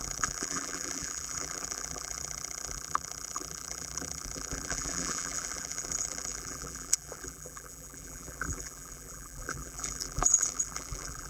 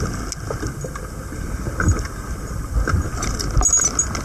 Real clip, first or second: second